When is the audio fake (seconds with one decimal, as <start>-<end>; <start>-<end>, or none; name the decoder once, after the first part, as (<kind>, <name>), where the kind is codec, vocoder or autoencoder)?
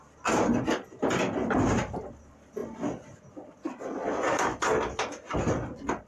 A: none